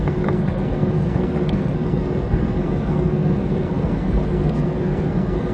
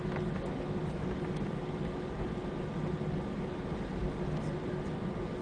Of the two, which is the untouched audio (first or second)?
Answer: second